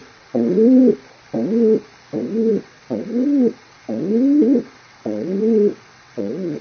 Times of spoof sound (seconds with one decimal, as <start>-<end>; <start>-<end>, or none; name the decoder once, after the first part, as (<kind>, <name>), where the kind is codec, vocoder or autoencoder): 0.0-0.8 (vocoder, WaveNeXt); 2.5-6.6